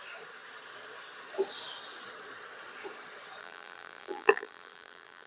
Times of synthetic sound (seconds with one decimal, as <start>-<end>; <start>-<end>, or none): 3.4-5.3